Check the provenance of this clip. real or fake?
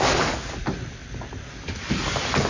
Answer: real